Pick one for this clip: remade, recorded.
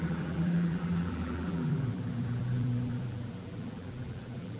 remade